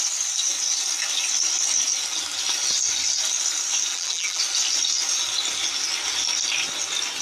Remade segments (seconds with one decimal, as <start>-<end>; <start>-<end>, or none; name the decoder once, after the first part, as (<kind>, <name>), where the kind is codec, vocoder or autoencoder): 3.9-4.4 (vocoder, BigVGAN v2)